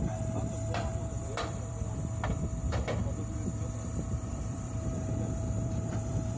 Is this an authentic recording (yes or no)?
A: no